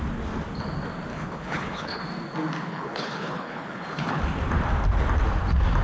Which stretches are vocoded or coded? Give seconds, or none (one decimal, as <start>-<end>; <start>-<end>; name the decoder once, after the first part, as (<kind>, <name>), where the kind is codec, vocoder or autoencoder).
1.1-2.0 (codec, HILCodec); 2.7-4.2

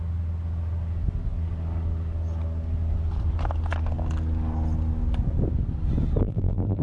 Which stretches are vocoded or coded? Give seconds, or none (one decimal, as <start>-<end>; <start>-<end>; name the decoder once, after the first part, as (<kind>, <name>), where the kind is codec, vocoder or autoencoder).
6.2-6.8 (vocoder, BigVGAN v2)